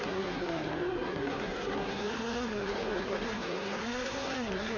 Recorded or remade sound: remade